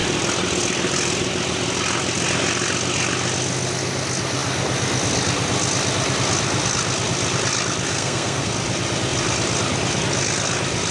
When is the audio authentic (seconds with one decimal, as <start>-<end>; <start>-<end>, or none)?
0.0-7.9; 8.5-10.9